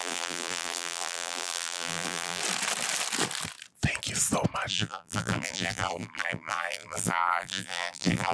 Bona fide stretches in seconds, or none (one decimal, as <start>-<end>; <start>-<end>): 2.4-4.7